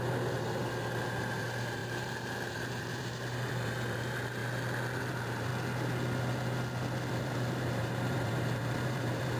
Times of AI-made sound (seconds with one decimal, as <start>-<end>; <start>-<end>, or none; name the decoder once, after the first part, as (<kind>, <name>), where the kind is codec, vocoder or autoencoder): 0.0-4.4 (vocoder, BigVGAN v2); 5.0-5.5; 7.1-9.4